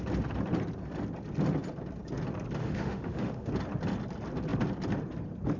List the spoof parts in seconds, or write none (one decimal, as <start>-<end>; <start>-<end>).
2.6-3.5